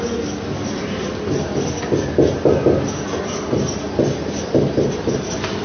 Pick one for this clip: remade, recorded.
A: recorded